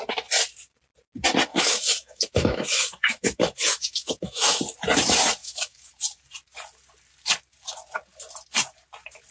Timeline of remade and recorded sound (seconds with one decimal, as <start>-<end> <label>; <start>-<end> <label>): 0.0-1.5 recorded; 1.5-4.6 remade; 4.6-5.4 recorded; 5.4-5.9 remade; 5.9-9.3 recorded